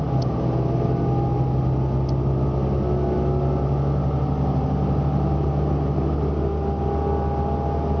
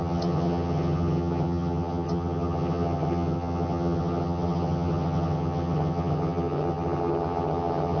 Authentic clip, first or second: first